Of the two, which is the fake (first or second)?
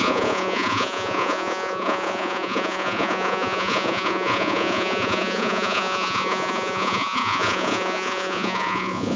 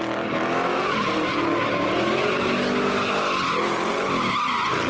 first